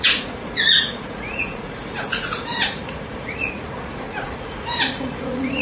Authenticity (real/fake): fake